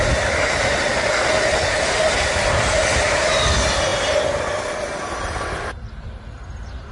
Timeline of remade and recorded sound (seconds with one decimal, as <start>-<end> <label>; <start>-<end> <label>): 0.0-6.9 recorded